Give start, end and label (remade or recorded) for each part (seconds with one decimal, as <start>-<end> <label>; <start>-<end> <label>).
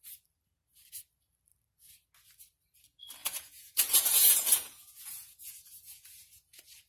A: 0.0-3.2 recorded; 3.2-6.9 remade